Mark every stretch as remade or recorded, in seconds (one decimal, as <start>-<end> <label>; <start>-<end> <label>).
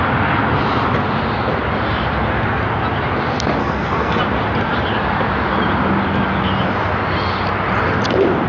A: 0.0-3.6 recorded; 3.6-4.2 remade; 4.2-8.5 recorded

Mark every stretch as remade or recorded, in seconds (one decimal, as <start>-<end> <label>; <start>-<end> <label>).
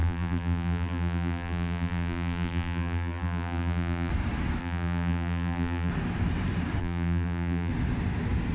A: 0.0-4.1 remade; 4.1-4.6 recorded; 4.6-5.9 remade; 5.9-6.8 recorded; 6.8-7.7 remade; 7.7-8.5 recorded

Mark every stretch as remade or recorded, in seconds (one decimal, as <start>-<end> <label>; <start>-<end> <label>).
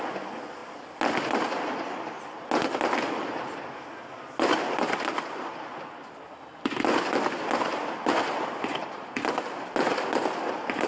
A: 0.0-10.9 recorded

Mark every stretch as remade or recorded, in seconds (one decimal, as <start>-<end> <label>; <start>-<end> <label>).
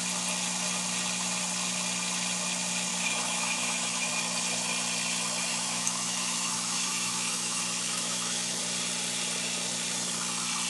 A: 0.0-2.9 recorded; 2.9-4.1 remade; 4.1-5.5 recorded; 5.5-8.6 remade; 8.6-10.7 recorded